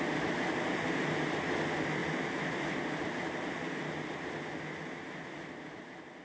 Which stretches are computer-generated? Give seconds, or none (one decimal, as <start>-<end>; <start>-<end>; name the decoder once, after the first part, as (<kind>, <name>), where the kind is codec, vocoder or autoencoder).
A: none